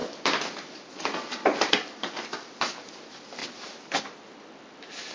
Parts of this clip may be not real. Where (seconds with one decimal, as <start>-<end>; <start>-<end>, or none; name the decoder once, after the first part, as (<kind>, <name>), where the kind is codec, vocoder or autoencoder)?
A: none